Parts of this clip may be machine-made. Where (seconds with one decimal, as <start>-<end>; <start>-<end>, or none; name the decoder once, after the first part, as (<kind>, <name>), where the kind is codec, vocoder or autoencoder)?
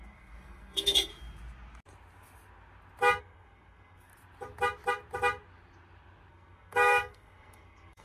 0.0-1.1 (codec, SNAC); 3.2-4.1; 6.3-8.0